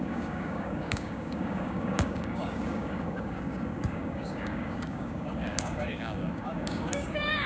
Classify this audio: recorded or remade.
remade